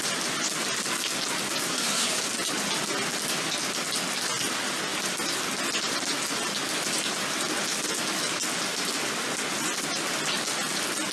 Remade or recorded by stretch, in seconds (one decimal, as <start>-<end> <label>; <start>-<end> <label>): 0.0-1.6 recorded; 1.6-2.2 remade; 2.2-11.1 recorded